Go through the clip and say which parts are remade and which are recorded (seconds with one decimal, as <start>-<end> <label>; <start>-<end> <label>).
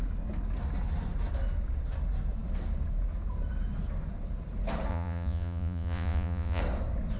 0.0-4.9 recorded; 4.9-6.6 remade; 6.6-7.2 recorded